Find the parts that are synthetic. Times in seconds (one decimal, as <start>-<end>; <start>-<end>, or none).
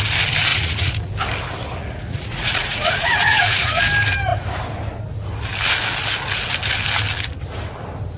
0.5-1.1; 2.0-3.8